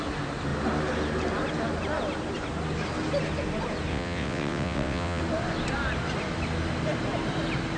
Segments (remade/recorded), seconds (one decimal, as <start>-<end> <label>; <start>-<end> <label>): 0.0-3.9 recorded; 3.9-5.2 remade; 5.2-7.8 recorded